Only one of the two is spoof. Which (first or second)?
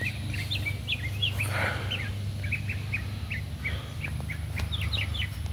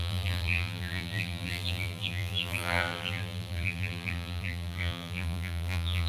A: second